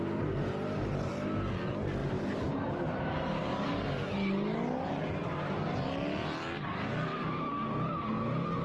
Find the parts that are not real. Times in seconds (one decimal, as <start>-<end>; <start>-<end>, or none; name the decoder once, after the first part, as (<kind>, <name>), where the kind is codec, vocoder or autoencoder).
2.0-3.7 (vocoder, BigVGAN v2)